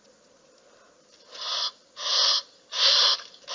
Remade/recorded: recorded